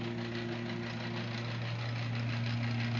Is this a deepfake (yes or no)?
no